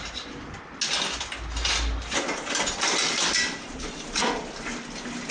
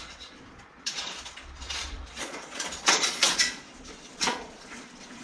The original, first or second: first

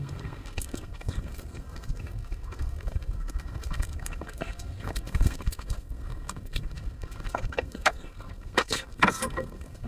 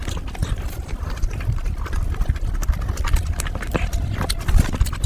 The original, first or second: second